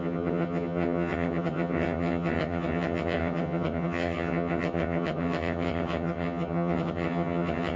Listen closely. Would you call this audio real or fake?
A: fake